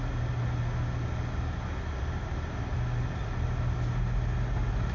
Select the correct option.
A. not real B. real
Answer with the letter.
B